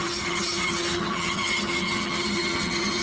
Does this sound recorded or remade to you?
remade